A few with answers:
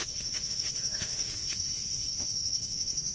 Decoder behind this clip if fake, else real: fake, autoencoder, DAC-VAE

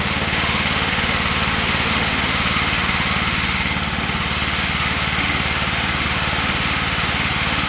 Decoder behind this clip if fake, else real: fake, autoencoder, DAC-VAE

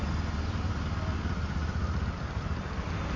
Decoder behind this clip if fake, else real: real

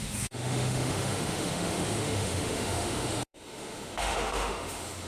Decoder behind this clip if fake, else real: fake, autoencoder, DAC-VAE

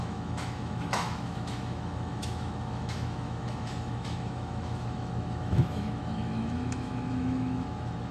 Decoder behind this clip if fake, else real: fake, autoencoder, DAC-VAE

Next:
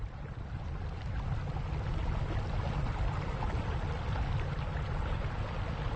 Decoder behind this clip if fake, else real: real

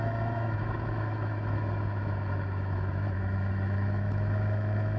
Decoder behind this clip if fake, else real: fake, autoencoder, DAC-VAE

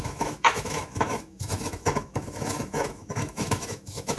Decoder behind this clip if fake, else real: fake, autoencoder, DAC-VAE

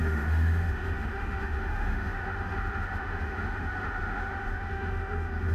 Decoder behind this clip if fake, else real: fake, autoencoder, DAC-VAE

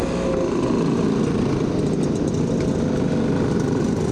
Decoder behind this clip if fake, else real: real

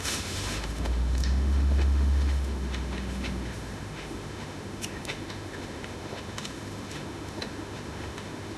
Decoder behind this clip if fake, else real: fake, autoencoder, DAC-VAE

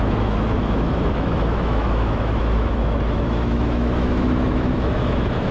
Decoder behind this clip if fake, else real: fake, autoencoder, DAC-VAE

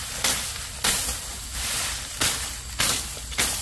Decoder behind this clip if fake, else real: real